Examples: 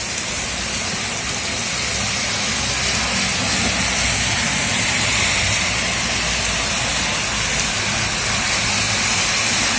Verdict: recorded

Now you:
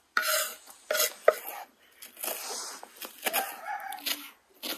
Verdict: recorded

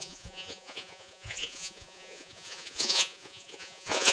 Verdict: remade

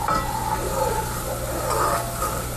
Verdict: recorded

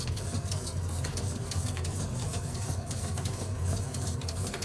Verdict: remade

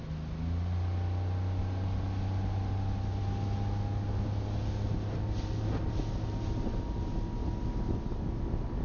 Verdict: recorded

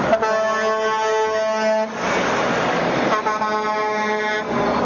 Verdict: recorded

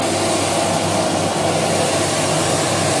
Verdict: recorded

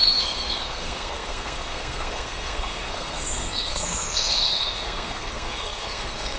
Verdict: remade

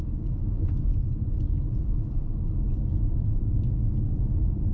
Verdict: recorded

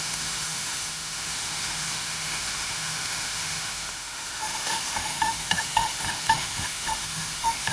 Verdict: remade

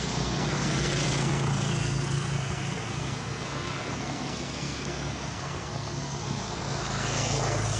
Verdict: remade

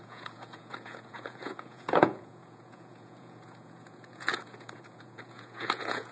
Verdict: remade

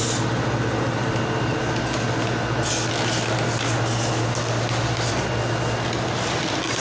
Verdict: recorded